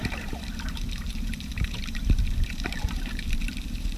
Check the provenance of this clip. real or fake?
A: fake